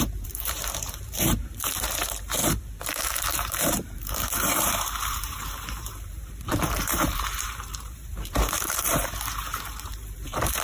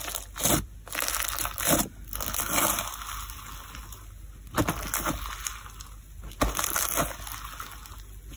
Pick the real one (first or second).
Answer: second